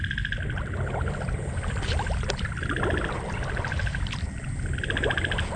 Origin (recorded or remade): remade